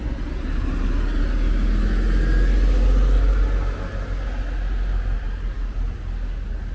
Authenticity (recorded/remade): recorded